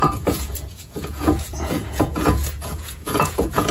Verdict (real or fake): fake